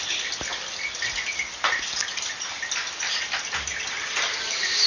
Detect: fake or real real